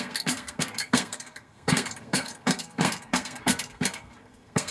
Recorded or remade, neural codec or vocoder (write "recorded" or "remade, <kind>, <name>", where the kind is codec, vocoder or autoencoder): remade, codec, SNAC